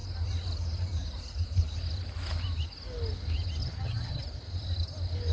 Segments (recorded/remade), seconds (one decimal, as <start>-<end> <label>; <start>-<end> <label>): 0.0-3.6 recorded; 3.6-4.2 remade; 4.2-5.3 recorded